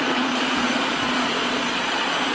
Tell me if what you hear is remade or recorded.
remade